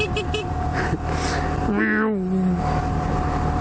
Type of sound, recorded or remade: recorded